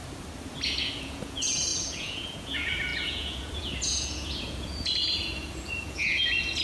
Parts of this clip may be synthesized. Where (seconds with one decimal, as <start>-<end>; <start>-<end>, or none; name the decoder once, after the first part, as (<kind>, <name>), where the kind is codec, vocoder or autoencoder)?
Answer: 0.9-6.6 (vocoder, Vocos)